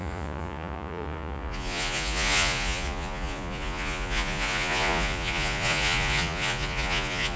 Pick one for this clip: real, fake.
fake